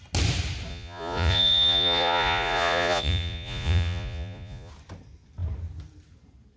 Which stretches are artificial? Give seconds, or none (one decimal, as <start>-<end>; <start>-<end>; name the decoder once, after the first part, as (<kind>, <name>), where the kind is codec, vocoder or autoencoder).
0.7-4.7 (vocoder, Vocos)